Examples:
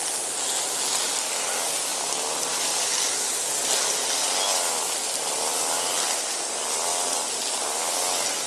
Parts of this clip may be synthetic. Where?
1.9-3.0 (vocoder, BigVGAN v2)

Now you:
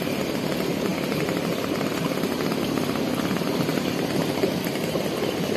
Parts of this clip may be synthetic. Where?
none

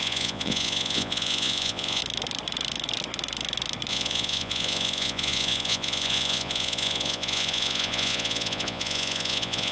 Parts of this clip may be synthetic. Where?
0.0-2.0 (vocoder, Vocos); 3.9-9.7